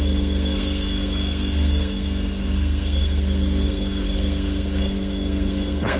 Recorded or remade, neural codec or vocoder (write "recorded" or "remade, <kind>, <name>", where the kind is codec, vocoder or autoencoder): remade, codec, SNAC